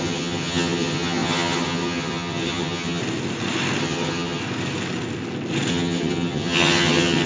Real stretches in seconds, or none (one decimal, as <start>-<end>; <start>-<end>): 3.0-3.8; 4.4-5.7